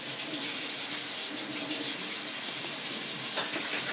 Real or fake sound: real